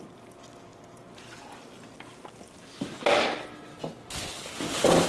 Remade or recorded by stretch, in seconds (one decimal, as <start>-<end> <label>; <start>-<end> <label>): 0.0-5.1 recorded